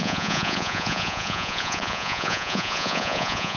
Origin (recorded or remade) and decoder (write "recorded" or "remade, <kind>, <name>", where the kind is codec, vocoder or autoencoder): remade, vocoder, Vocos